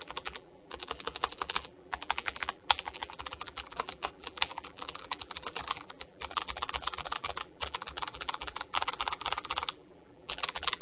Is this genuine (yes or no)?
no